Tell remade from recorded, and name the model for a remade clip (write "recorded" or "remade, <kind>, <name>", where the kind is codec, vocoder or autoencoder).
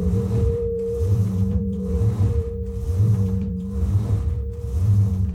remade, vocoder, BigVGAN v2